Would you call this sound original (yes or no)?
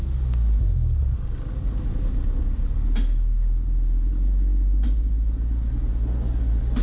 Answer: yes